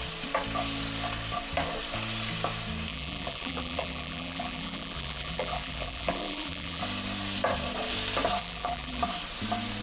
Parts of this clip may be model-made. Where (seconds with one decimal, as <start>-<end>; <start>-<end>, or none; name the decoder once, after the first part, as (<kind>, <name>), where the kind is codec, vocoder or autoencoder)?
2.9-6.8 (vocoder, BigVGAN v2); 8.4-9.0